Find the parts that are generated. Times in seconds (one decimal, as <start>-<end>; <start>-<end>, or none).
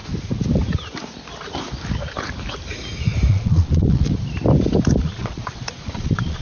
3.3-4.1; 5.0-6.4